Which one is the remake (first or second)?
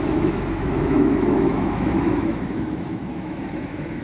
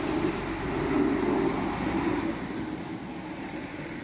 first